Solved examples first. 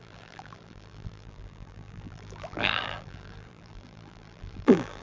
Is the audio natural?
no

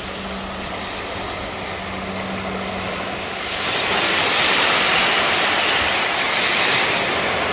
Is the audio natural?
yes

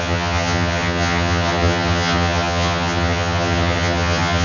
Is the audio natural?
no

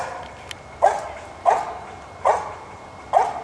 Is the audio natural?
yes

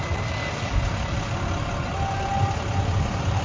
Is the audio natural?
yes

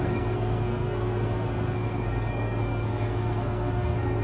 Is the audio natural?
no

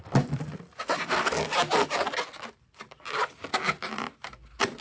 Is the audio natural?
no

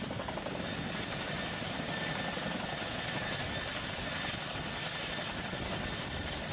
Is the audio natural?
yes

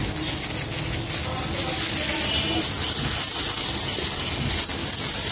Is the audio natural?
yes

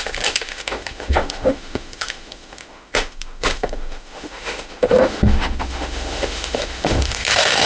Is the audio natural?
no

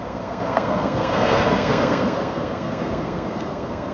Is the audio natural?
no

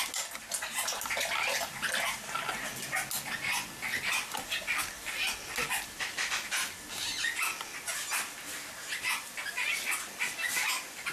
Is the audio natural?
yes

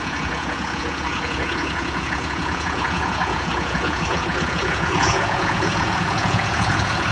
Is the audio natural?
no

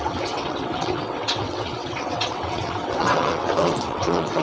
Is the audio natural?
no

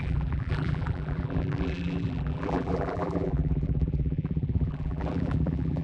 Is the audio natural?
no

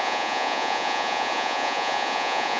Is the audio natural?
no